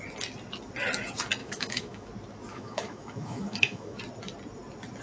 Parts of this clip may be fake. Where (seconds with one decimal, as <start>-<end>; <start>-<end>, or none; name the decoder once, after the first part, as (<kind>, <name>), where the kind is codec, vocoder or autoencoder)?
1.4-2.1 (autoencoder, DAC-VAE); 2.5-4.0